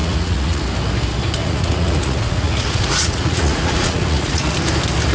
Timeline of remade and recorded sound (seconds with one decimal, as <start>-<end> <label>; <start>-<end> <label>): 0.0-0.6 remade; 0.6-1.4 recorded; 1.4-4.5 remade; 4.5-5.1 recorded